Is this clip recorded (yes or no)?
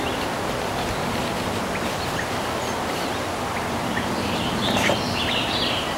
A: yes